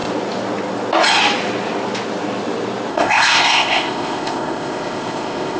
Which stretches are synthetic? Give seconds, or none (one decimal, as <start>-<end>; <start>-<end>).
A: 2.9-5.6

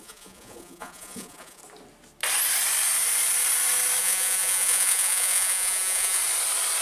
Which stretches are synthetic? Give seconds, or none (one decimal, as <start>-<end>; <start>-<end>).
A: 0.0-1.6; 4.0-6.2

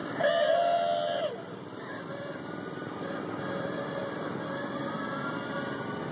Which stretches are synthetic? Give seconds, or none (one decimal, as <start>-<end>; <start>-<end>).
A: none

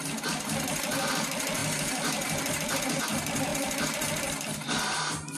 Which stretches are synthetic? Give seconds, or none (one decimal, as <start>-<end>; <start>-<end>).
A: none

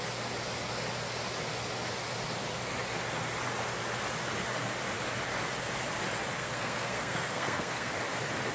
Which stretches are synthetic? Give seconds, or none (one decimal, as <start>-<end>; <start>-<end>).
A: 6.4-7.9

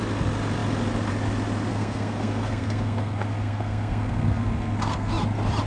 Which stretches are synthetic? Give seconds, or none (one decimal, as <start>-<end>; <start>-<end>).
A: 1.7-5.1